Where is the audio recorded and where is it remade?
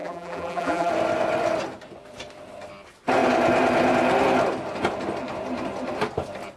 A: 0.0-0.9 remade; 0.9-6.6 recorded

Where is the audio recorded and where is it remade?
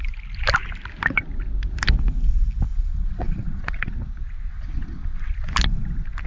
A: 0.0-2.7 recorded; 2.7-3.9 remade; 3.9-4.5 recorded; 4.5-5.3 remade; 5.3-6.3 recorded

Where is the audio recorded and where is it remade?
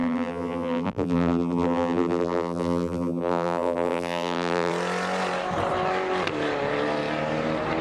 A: 0.0-4.7 remade; 4.7-7.8 recorded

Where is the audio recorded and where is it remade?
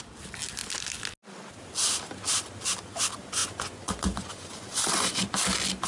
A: 0.0-3.4 recorded; 3.4-5.3 remade; 5.3-5.9 recorded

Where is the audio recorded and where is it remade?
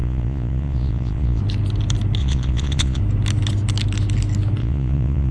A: 0.0-1.4 remade; 1.4-2.2 recorded; 2.2-3.0 remade; 3.0-4.6 recorded; 4.6-5.3 remade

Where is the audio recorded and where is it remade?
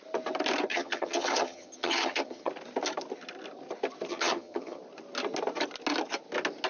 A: 0.0-0.7 recorded; 0.7-2.5 remade; 2.5-4.1 recorded; 4.1-4.8 remade; 4.8-6.7 recorded